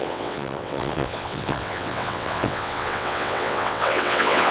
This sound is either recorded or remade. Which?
remade